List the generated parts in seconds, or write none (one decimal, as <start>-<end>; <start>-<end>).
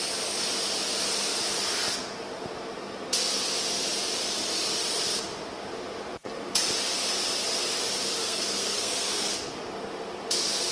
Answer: 8.2-9.3